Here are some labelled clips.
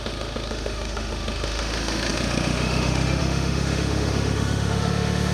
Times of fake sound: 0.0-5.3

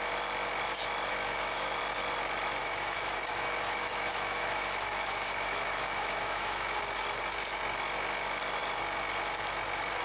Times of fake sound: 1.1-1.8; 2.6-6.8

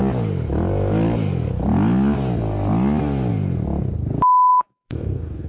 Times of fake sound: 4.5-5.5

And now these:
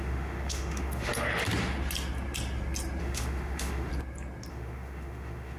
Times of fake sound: 0.0-1.1; 3.0-3.9; 4.5-5.6

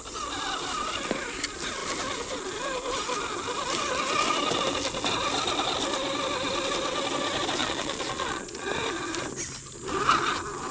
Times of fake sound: 7.6-8.7

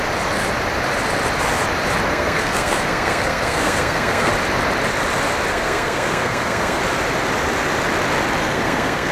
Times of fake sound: 2.1-4.3; 5.5-6.8; 8.4-9.1

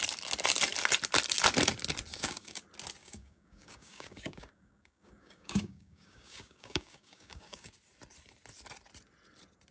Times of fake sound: 2.1-2.6; 3.0-7.7